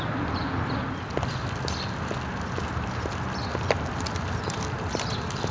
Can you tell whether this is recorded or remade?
recorded